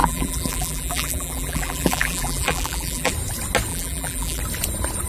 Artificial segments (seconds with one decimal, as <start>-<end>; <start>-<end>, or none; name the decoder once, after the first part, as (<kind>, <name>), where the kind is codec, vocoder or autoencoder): 0.0-3.1 (vocoder, BigVGAN v2); 3.7-4.4